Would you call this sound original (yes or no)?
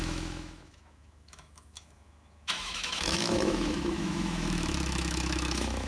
no